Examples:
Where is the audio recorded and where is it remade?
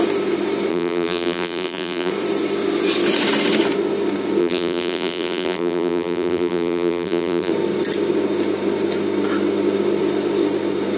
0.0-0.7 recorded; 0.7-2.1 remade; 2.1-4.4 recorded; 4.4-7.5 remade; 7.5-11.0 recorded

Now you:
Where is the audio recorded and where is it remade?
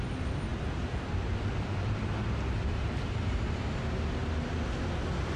0.0-0.5 recorded; 0.5-3.4 remade; 3.4-5.4 recorded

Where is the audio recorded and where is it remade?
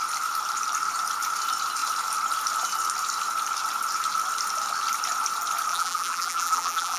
0.0-5.7 recorded; 5.7-7.0 remade